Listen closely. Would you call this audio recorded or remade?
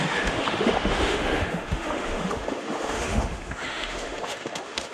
remade